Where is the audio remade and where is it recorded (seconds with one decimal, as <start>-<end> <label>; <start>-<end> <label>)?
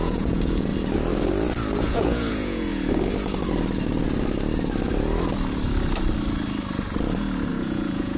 0.0-0.7 remade; 0.7-1.8 recorded; 1.8-2.7 remade; 2.7-7.5 recorded; 7.5-8.2 remade